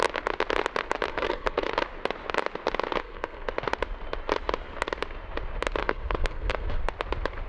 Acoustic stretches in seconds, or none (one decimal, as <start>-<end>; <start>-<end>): 0.0-1.1; 1.7-3.0; 3.5-5.8; 6.8-7.5